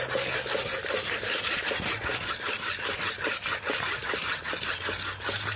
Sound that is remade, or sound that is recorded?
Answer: recorded